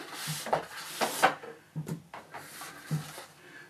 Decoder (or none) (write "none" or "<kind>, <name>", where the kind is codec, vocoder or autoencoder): none